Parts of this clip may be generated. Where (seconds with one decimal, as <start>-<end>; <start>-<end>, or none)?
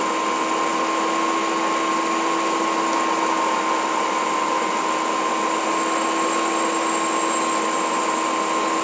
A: none